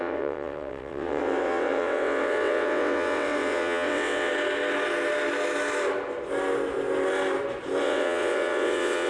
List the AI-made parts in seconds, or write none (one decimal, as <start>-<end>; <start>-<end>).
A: 0.0-4.3; 7.8-9.1